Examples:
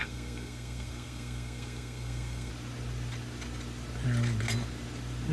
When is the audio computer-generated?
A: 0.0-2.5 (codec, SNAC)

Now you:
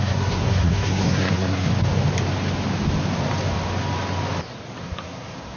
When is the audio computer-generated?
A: 0.0-1.7 (codec, SNAC); 4.8-5.6